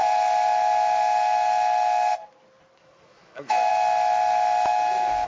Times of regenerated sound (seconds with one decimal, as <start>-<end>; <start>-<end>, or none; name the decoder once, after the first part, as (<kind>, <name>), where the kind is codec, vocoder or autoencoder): 2.8-3.7 (autoencoder, DAC-VAE); 4.7-5.3